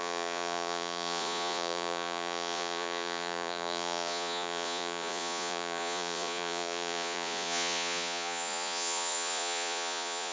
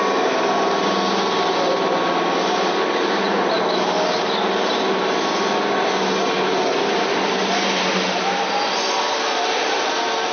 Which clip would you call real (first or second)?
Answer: second